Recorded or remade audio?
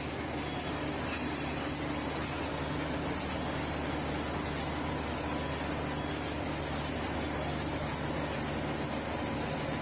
recorded